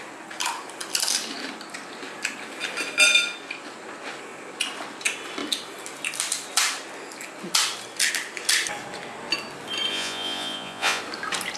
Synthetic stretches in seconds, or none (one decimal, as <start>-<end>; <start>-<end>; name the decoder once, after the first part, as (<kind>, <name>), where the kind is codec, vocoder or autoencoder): 9.9-11.0 (vocoder, Vocos)